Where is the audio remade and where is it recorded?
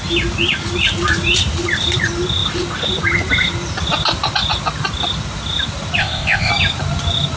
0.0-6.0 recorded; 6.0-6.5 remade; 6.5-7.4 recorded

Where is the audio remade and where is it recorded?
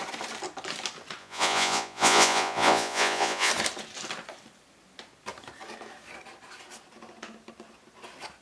0.0-1.2 recorded; 1.2-3.5 remade; 3.5-8.4 recorded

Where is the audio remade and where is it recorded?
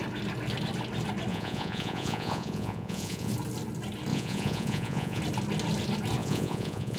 0.0-1.3 recorded; 1.3-3.3 remade; 3.3-4.1 recorded; 4.1-5.2 remade; 5.2-6.2 recorded; 6.2-7.0 remade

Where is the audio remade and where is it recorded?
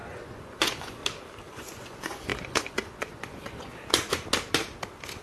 0.0-1.0 remade; 1.0-1.5 recorded; 1.5-3.7 remade; 3.7-5.2 recorded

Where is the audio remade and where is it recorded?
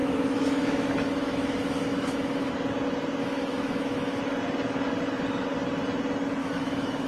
0.0-2.5 remade; 2.5-3.2 recorded; 3.2-4.2 remade; 4.2-6.4 recorded; 6.4-7.1 remade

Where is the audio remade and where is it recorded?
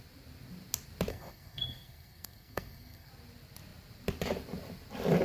0.0-1.1 recorded; 1.1-3.1 remade; 3.1-5.2 recorded